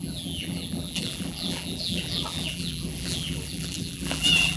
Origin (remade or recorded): remade